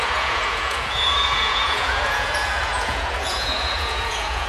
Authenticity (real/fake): fake